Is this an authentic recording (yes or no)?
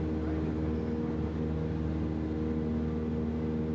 yes